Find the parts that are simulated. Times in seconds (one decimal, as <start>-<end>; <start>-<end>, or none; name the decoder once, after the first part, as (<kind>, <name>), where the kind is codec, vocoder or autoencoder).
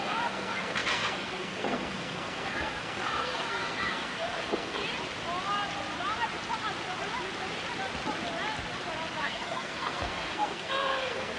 0.0-4.8 (codec, SNAC); 9.2-11.4